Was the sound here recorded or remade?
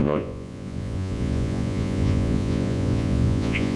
remade